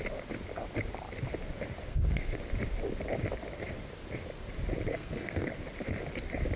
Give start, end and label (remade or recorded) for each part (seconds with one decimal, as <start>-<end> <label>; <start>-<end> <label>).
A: 0.0-1.9 recorded; 1.9-2.4 remade; 2.4-4.9 recorded; 4.9-5.5 remade; 5.5-6.6 recorded